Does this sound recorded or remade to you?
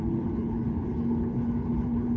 remade